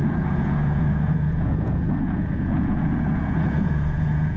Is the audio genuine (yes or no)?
no